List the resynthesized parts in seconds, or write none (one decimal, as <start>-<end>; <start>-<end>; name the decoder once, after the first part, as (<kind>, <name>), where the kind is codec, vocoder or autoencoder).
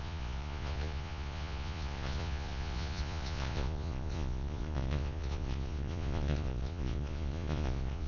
0.0-8.1 (vocoder, Vocos)